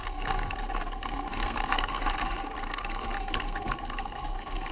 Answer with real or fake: fake